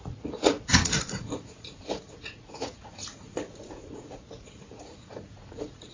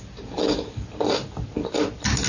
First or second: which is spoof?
first